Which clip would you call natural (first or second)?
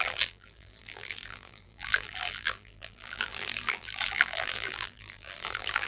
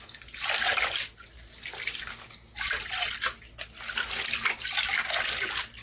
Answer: second